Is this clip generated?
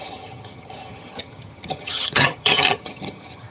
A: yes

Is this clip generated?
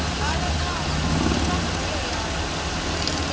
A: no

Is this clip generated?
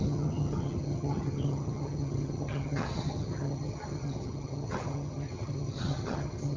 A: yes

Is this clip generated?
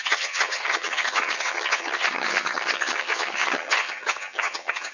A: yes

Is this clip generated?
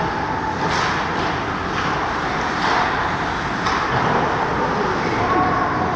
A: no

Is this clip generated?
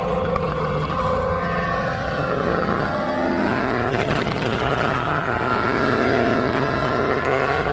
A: yes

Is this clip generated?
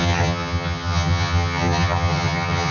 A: yes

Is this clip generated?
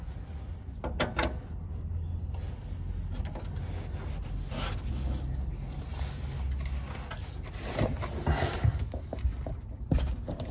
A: no